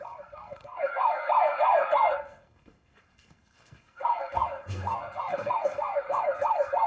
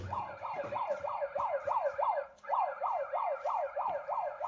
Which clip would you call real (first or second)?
second